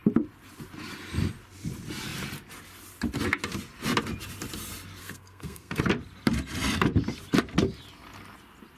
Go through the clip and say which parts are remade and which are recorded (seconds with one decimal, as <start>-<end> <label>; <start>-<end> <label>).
0.0-5.0 recorded; 5.0-5.8 remade; 5.8-8.8 recorded